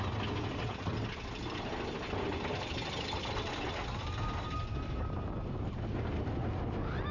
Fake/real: real